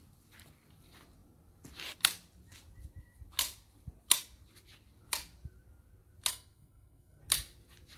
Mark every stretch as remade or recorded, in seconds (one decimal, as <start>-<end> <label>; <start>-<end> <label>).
0.0-6.3 recorded; 6.3-7.2 remade; 7.2-8.0 recorded